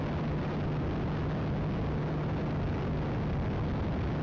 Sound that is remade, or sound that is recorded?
recorded